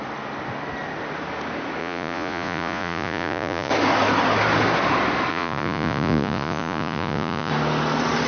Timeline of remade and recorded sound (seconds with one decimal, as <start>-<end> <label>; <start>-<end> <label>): 0.0-1.8 recorded; 1.8-3.7 remade; 3.7-5.3 recorded; 5.3-7.5 remade; 7.5-8.3 recorded